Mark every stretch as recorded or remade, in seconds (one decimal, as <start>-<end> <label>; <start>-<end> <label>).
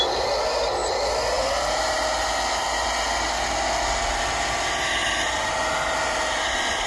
0.0-6.9 recorded